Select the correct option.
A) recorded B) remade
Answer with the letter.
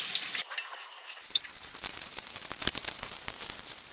B